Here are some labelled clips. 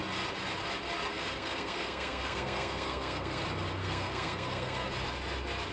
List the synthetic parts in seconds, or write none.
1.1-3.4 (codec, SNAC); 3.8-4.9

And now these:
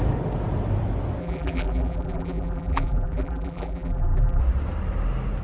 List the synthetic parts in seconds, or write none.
1.2-4.4 (vocoder, BigVGAN v2)

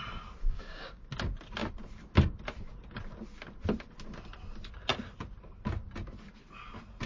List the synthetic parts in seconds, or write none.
0.4-0.9 (codec, DAC)

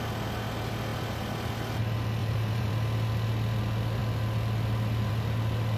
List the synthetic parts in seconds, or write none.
2.2-2.7 (vocoder, BigVGAN v2)